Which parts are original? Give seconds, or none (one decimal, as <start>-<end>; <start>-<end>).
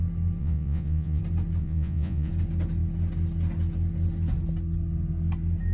0.0-0.4; 1.2-1.6; 2.3-5.7